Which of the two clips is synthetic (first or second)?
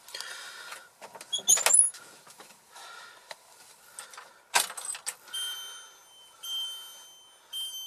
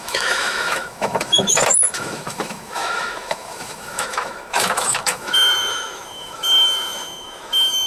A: second